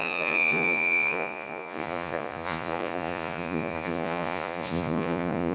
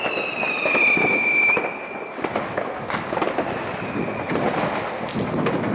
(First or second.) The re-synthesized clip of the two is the first